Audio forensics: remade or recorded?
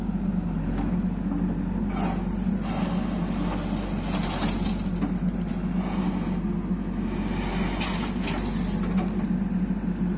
recorded